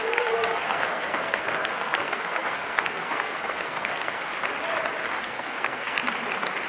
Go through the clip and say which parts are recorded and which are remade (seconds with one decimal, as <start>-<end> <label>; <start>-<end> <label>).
0.0-4.3 remade; 4.3-5.2 recorded; 5.2-6.0 remade; 6.0-6.7 recorded

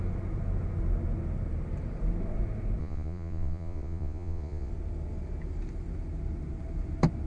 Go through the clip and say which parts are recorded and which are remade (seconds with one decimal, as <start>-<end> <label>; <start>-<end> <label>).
0.0-2.8 recorded; 2.8-4.7 remade; 4.7-7.3 recorded

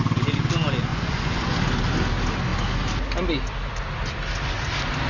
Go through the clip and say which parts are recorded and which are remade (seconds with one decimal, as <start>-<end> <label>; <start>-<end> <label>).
0.0-0.9 recorded; 0.9-1.5 remade; 1.5-5.1 recorded

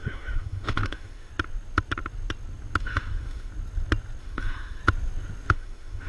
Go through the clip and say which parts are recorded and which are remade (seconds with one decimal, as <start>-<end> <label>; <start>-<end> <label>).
0.0-1.3 remade; 1.3-2.8 recorded; 2.8-3.5 remade; 3.5-4.2 recorded; 4.2-4.8 remade; 4.8-5.5 recorded; 5.5-6.1 remade